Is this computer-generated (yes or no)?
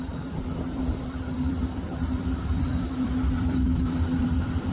yes